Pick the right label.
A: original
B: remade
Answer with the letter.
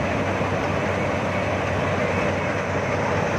A